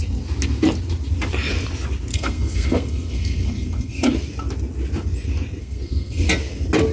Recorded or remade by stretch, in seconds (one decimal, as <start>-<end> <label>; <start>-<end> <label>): 0.0-2.1 recorded; 2.1-4.1 remade; 4.1-5.6 recorded; 5.6-6.2 remade; 6.2-6.9 recorded